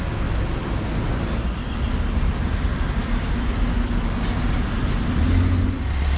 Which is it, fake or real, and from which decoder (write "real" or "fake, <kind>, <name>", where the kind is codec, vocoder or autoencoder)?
real